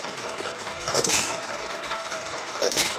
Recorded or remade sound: remade